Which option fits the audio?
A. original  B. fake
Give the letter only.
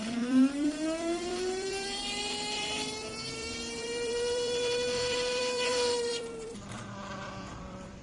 B